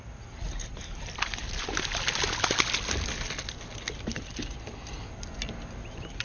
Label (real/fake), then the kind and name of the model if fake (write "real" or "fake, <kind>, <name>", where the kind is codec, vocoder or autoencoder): real